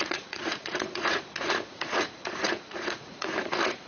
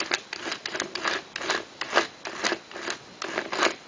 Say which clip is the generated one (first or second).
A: first